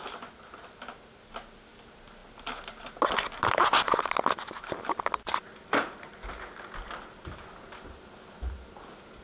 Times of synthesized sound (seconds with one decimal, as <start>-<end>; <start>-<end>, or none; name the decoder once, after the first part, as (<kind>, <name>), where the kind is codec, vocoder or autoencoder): none